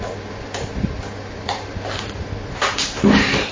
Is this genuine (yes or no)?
yes